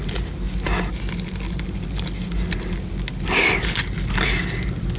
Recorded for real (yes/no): yes